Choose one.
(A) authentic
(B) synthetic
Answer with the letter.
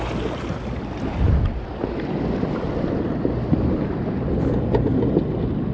A